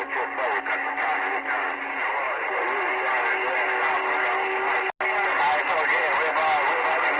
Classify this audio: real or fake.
real